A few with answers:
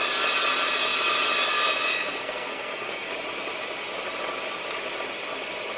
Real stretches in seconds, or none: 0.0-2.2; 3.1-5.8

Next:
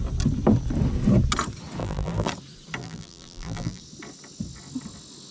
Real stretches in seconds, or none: 0.0-1.8; 2.3-2.8; 3.8-5.3